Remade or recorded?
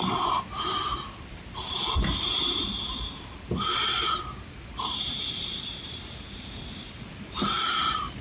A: remade